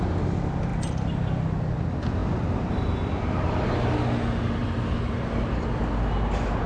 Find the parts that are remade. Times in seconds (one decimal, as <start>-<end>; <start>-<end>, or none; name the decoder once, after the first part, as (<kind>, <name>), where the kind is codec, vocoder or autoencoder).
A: 2.2-2.8 (vocoder, BigVGAN v2); 4.6-5.8